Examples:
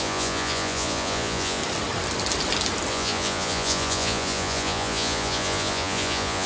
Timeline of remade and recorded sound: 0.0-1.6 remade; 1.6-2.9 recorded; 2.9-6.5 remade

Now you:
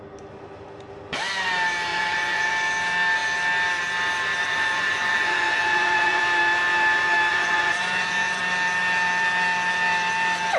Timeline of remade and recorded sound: 0.0-1.9 recorded; 1.9-2.5 remade; 2.5-4.4 recorded; 4.4-6.2 remade; 6.2-7.3 recorded; 7.3-8.4 remade; 8.4-10.6 recorded

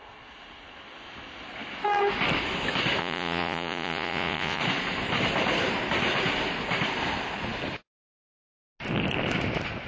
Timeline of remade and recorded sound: 0.0-3.0 recorded; 3.0-4.6 remade; 4.6-9.9 recorded